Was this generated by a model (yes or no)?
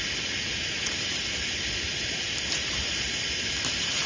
no